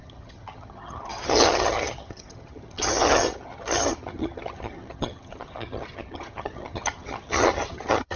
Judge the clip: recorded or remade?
remade